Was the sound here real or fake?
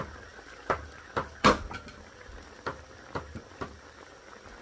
real